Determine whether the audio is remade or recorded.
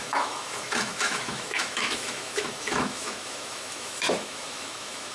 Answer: remade